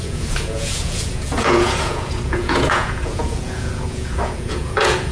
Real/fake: fake